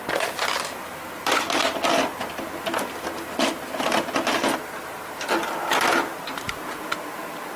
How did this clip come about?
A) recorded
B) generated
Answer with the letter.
A